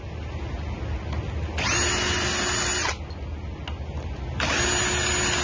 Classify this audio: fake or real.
real